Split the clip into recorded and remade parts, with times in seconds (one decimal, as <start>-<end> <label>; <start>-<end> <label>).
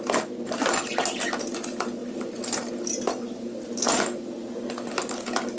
0.0-5.6 recorded